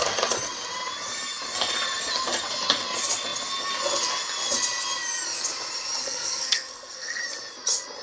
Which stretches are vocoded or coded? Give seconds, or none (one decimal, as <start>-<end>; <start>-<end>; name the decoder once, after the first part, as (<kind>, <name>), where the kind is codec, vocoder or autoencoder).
6.0-7.2 (codec, SNAC)